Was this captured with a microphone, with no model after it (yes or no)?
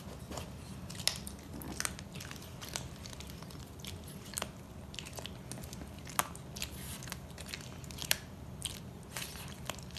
yes